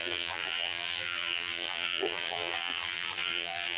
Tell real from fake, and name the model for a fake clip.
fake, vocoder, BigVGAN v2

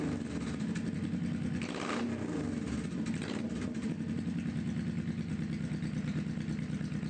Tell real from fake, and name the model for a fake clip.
real